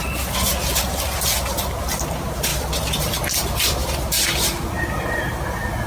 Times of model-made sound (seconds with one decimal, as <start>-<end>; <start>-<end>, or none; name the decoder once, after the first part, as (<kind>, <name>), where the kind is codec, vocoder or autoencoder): 2.5-4.7 (vocoder, BigVGAN v2)